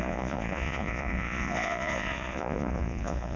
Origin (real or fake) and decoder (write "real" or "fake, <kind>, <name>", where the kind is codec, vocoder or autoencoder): fake, vocoder, Vocos